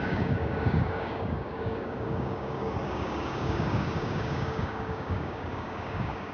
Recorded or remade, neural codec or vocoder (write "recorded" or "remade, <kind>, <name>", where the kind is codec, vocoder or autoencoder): remade, codec, DAC